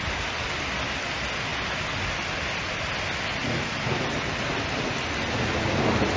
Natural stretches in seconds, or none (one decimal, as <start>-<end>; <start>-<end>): 0.0-6.2